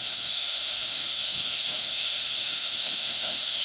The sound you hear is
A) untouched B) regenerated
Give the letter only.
B